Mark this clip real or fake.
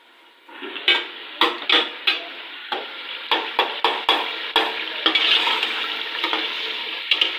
real